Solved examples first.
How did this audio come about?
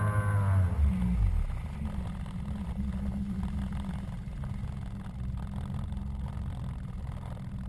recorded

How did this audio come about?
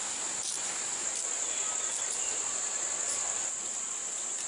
recorded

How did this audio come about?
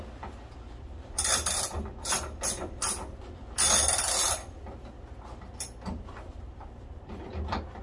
remade